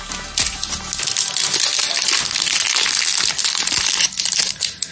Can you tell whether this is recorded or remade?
recorded